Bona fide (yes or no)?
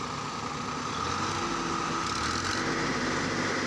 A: yes